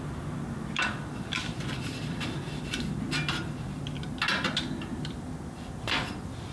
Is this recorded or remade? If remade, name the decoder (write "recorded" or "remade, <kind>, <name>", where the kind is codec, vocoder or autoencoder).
recorded